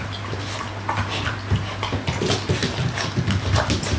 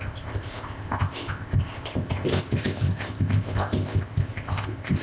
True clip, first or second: first